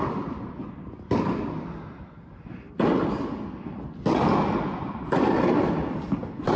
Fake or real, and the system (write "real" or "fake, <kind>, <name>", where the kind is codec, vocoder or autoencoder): real